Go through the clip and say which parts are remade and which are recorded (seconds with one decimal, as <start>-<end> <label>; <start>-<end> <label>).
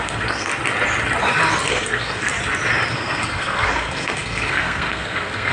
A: 0.0-0.5 remade; 0.5-1.7 recorded; 1.7-2.3 remade; 2.3-2.9 recorded; 2.9-5.5 remade